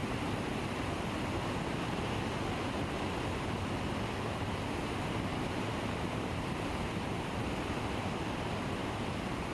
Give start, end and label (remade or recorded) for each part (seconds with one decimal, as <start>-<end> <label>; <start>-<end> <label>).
0.0-1.3 remade; 1.3-5.3 recorded; 5.3-7.5 remade; 7.5-8.8 recorded; 8.8-9.5 remade